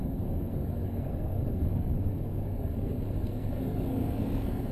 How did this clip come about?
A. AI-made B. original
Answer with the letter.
A